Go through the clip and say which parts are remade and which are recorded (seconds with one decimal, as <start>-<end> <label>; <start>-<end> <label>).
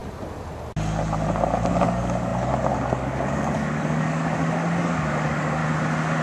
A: 0.0-1.7 recorded; 1.7-5.6 remade; 5.6-6.2 recorded